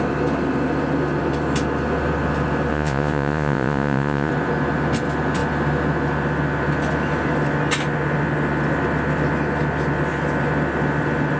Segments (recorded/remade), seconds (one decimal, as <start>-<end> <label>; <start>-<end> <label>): 0.0-2.7 recorded; 2.7-4.3 remade; 4.3-11.4 recorded